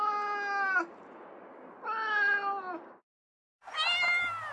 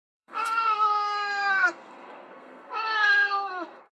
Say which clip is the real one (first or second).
first